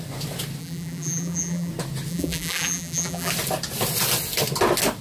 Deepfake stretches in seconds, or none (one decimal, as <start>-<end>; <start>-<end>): 0.6-1.7; 2.1-3.3